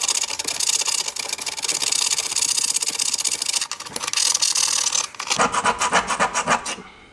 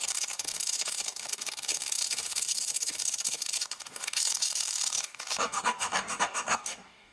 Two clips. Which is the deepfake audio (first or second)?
second